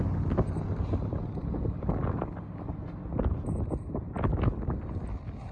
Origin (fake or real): real